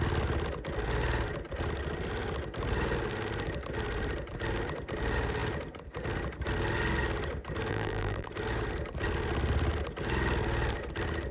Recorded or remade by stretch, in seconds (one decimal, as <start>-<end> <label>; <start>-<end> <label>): 0.0-7.7 recorded; 7.7-8.3 remade; 8.3-11.3 recorded